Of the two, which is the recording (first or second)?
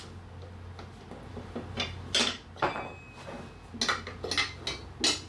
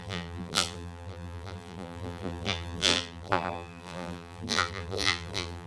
first